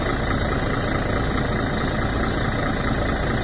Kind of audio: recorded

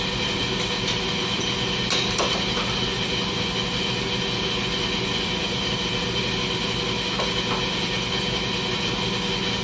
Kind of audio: recorded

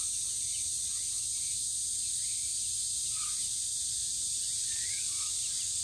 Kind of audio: recorded